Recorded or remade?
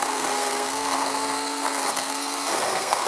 remade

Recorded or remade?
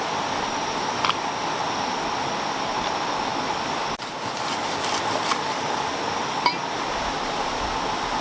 recorded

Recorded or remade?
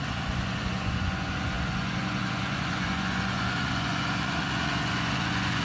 remade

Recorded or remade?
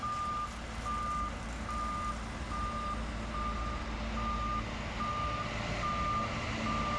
recorded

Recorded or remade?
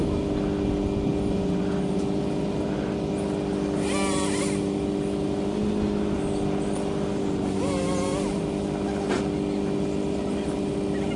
recorded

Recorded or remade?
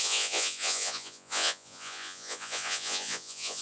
remade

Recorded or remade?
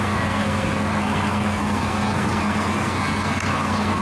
remade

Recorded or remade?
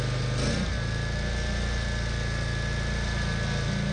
recorded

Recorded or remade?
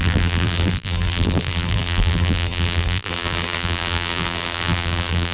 remade